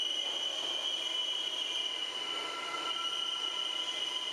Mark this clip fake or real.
real